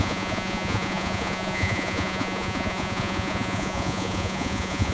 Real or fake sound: fake